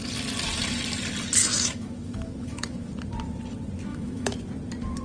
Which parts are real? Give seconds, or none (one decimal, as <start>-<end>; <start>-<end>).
0.0-1.4; 2.9-3.9; 4.4-5.0